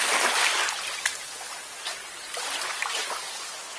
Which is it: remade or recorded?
recorded